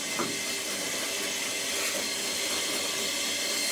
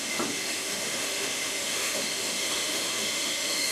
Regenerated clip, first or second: second